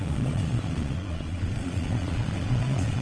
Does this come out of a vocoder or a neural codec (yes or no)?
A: yes